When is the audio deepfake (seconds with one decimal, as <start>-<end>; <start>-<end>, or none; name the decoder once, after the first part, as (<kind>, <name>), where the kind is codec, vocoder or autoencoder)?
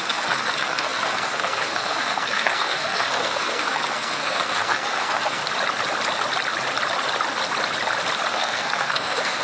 0.0-5.4 (codec, SNAC); 8.3-9.4